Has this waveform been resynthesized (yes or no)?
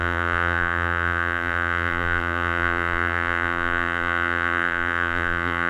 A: yes